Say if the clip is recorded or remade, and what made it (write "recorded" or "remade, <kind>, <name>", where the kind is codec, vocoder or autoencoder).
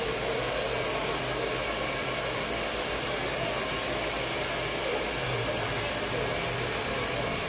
recorded